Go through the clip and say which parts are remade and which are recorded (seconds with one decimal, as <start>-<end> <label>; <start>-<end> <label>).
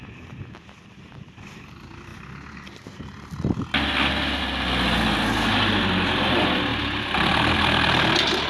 0.0-8.5 recorded